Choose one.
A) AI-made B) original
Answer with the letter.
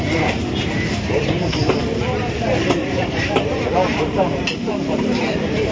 A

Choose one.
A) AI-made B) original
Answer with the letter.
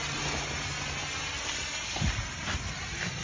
B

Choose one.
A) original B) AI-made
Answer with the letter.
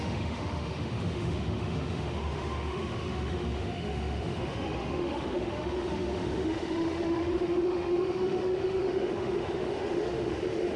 B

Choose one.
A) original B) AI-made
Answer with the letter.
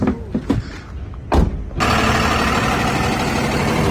A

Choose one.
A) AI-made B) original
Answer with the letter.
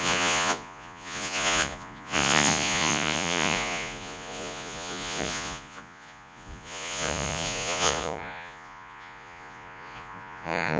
A